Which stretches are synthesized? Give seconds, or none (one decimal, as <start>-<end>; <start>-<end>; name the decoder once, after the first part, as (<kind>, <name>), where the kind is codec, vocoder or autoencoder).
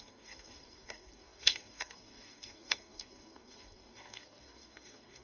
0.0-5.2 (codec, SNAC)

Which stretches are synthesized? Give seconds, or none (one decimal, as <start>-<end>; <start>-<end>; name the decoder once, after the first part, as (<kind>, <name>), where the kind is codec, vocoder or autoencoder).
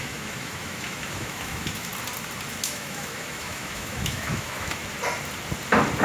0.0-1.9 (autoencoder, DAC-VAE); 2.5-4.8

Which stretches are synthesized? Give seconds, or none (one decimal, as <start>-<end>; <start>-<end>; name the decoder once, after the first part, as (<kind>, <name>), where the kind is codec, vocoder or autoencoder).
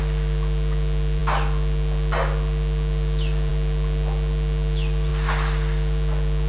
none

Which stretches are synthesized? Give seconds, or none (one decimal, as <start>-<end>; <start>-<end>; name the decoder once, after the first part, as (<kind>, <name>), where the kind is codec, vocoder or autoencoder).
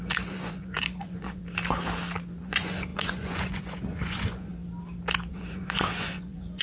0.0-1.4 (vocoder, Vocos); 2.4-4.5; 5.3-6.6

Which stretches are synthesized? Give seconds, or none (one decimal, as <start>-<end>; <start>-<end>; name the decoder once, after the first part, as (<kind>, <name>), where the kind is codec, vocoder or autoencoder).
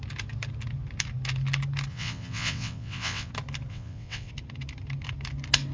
1.9-3.3 (vocoder, WaveNeXt); 3.7-4.3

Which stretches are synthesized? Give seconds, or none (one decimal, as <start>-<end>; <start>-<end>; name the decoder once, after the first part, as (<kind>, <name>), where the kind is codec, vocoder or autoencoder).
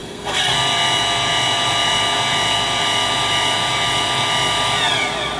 0.0-0.5 (codec, SNAC)